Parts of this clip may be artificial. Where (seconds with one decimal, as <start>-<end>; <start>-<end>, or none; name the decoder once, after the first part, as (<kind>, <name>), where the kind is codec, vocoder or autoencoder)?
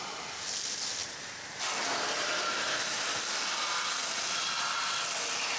none